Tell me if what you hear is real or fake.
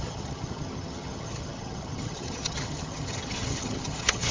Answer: fake